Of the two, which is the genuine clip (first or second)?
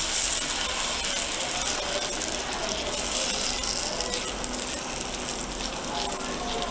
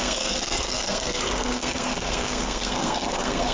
first